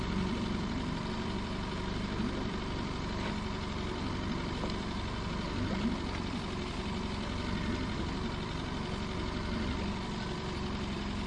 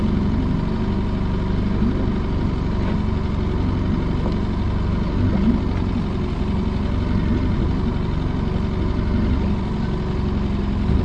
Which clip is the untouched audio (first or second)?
second